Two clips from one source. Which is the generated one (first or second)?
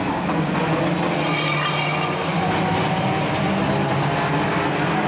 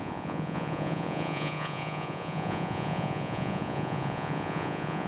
second